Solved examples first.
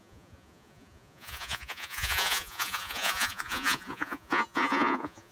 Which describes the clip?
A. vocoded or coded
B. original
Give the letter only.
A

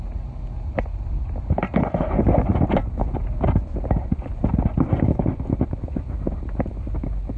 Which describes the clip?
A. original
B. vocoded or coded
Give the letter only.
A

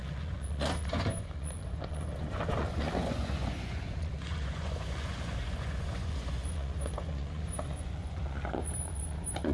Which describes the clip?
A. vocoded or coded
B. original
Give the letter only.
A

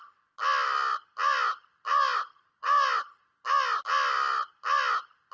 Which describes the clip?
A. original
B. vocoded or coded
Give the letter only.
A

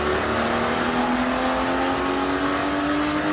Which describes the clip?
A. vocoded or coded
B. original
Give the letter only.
B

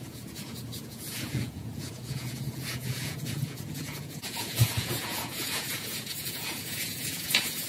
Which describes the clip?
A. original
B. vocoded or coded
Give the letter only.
B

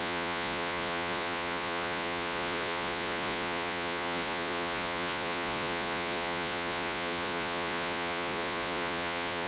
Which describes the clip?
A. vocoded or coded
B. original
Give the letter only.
A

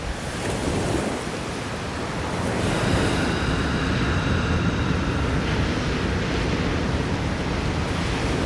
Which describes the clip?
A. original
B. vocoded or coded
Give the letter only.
A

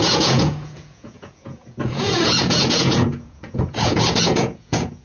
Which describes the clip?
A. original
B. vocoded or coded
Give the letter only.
B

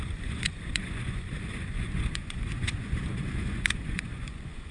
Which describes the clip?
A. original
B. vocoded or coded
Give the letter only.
B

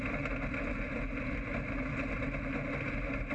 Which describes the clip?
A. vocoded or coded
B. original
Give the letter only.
B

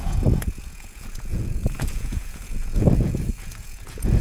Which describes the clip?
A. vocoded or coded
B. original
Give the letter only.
A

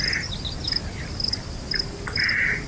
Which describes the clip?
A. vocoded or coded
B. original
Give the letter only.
B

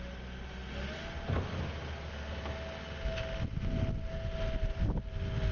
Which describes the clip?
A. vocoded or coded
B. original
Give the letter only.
B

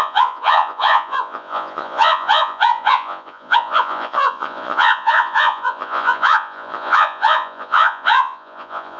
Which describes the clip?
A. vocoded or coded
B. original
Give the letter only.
A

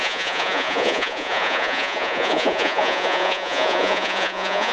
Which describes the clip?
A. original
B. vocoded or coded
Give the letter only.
B